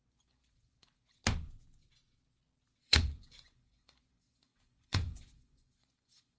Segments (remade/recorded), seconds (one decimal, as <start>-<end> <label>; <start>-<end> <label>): 0.0-1.2 remade; 1.2-2.8 recorded; 2.8-6.4 remade